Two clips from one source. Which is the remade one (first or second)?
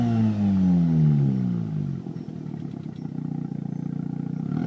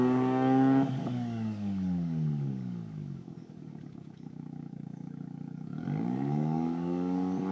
second